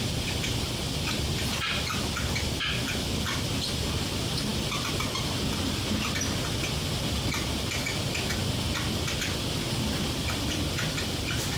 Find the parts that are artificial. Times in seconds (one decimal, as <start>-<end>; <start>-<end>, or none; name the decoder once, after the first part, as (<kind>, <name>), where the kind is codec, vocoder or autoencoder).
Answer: none

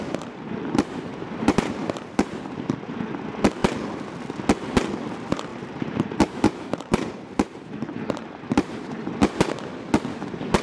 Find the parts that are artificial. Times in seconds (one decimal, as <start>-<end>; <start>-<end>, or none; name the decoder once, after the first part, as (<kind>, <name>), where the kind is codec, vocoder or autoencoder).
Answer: 1.1-2.4 (vocoder, BigVGAN v2); 5.5-9.1

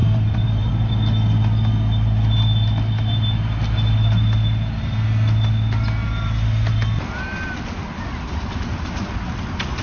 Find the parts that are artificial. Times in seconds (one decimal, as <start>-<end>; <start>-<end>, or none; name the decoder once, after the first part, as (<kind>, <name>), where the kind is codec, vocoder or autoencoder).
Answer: 0.0-0.7 (vocoder, BigVGAN v2)

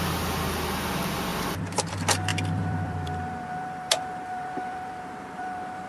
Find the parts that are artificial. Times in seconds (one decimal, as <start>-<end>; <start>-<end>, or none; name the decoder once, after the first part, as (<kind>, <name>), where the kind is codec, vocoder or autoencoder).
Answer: 1.3-1.9 (vocoder, BigVGAN v2); 2.3-5.9

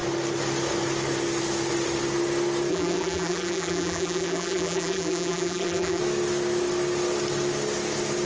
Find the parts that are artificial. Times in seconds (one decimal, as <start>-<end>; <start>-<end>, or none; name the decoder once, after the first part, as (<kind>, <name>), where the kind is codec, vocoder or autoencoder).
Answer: 2.7-6.0 (vocoder, BigVGAN v2)

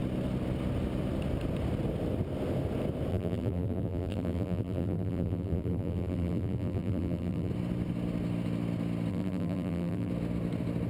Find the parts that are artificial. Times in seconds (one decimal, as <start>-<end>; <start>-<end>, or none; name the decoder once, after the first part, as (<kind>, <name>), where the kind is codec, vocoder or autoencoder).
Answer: 3.1-7.5 (vocoder, BigVGAN v2); 9.1-10.1

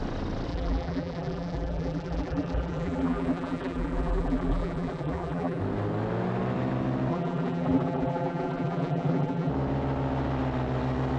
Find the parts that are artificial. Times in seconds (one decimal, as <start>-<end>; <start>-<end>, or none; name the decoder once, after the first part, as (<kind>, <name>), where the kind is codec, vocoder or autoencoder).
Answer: 0.5-5.6 (vocoder, BigVGAN v2); 7.1-9.5